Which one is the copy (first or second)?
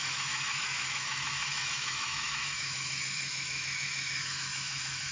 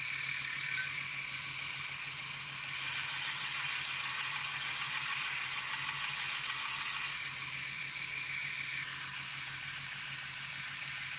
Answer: first